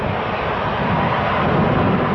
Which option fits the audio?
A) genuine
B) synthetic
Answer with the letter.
A